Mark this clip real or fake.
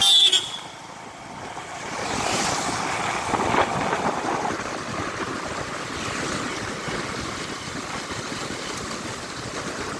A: real